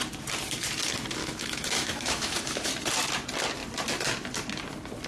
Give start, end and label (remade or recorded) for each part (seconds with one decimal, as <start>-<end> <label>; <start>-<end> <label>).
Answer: 0.0-1.2 recorded; 1.2-2.7 remade; 2.7-5.1 recorded